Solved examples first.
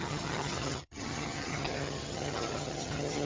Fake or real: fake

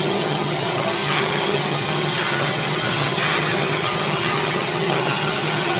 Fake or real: fake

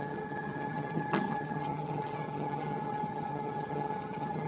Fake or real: fake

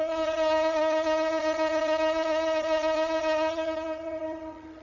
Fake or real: fake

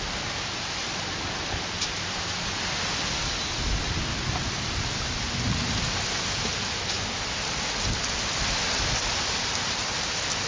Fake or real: real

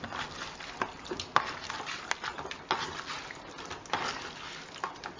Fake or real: real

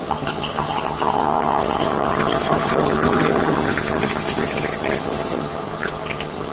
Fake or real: fake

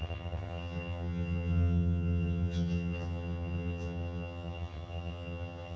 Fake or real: fake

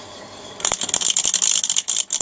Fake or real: real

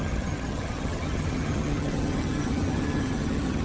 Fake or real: fake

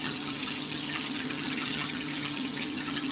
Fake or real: fake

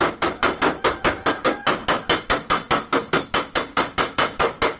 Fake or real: real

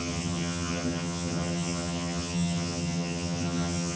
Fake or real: fake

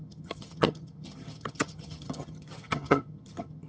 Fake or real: fake